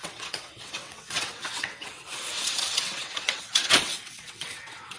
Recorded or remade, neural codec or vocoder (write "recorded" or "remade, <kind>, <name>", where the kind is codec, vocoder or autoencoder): remade, vocoder, WaveNeXt